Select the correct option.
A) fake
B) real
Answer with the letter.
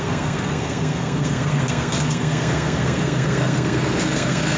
A